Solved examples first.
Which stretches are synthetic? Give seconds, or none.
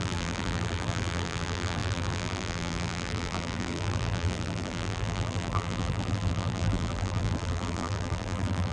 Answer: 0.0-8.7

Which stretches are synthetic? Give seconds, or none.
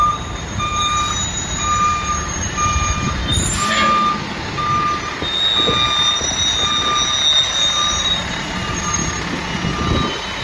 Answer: 0.0-3.2; 8.0-9.0